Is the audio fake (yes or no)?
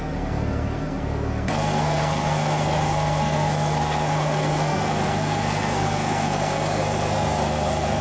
yes